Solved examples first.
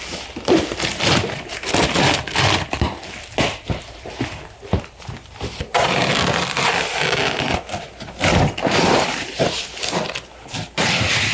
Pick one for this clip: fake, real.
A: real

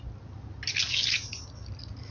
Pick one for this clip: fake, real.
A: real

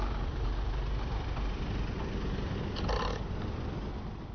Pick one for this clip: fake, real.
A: real